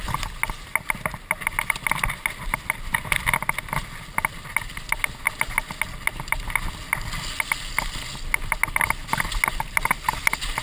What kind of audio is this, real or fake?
real